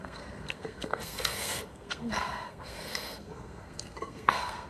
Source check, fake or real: fake